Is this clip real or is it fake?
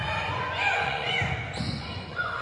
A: fake